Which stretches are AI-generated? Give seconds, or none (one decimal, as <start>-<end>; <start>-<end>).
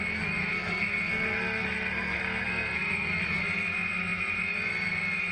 0.4-3.4